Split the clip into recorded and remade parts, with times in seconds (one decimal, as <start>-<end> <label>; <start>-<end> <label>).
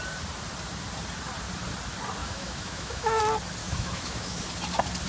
0.0-2.2 recorded; 2.2-3.2 remade; 3.2-3.6 recorded; 3.6-4.5 remade; 4.5-5.1 recorded